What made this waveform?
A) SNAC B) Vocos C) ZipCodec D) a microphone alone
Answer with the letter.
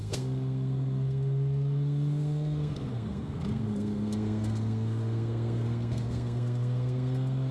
A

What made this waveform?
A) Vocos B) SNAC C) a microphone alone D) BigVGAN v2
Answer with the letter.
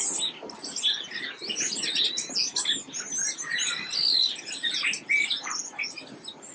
C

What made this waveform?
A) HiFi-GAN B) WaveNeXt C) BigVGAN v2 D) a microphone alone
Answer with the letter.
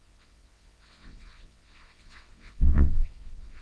B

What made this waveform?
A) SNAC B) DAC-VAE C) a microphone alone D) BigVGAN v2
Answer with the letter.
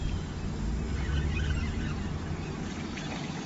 C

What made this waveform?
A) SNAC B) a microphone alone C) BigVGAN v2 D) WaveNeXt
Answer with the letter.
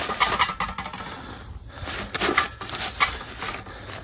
B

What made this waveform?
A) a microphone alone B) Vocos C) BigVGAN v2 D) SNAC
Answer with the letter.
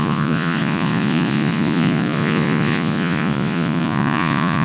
B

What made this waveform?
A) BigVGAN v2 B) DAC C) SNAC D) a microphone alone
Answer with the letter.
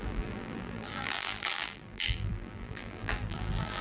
A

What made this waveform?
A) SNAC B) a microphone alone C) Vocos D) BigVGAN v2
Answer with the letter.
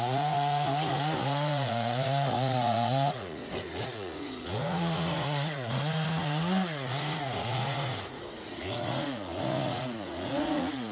C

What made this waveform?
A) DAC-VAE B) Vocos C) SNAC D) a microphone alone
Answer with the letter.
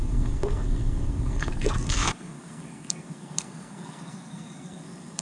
C